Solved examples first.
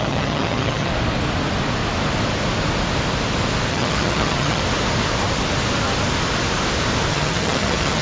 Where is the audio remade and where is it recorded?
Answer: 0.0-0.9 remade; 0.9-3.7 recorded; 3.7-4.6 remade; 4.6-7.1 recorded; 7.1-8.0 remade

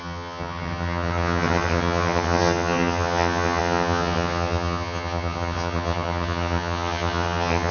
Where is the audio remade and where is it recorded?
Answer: 0.0-7.7 remade

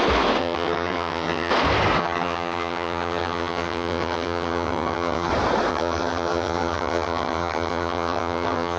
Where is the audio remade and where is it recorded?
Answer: 0.0-0.4 recorded; 0.4-1.5 remade; 1.5-2.0 recorded; 2.0-5.3 remade; 5.3-5.7 recorded; 5.7-8.8 remade

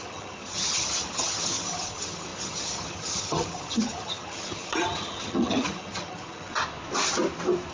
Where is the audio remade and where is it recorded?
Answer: 0.0-6.5 remade; 6.5-7.7 recorded